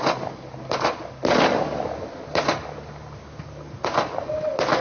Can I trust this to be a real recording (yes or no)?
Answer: yes